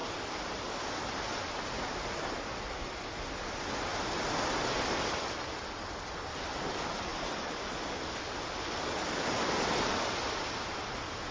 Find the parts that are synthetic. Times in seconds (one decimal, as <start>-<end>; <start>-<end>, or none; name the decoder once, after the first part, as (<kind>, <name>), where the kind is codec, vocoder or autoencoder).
none